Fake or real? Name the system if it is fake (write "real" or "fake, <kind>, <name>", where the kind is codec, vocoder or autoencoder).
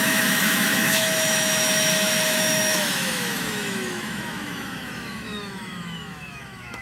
fake, autoencoder, DAC-VAE